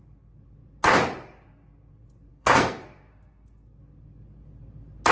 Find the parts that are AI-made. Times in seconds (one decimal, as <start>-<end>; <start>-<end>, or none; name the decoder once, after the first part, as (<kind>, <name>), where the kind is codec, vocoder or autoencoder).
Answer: 2.3-3.8 (codec, SNAC)